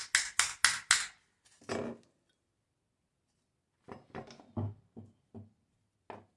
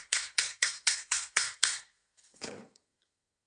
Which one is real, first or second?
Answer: first